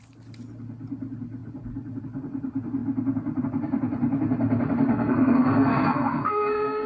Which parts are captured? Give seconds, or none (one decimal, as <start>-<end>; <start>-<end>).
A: 0.0-4.9